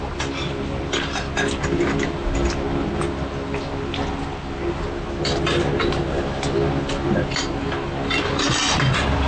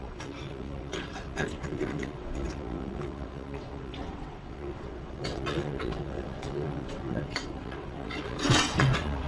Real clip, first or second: first